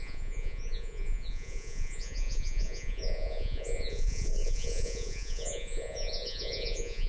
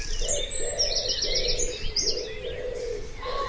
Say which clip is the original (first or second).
second